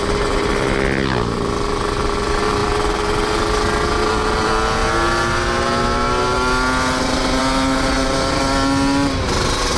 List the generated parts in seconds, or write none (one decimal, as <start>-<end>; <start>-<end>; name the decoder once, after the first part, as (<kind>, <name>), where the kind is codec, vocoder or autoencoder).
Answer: none